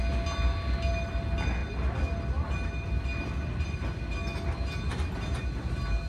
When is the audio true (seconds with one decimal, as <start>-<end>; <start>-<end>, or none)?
0.0-6.1